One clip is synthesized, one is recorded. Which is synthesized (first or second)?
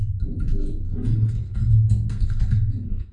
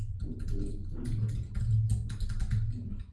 first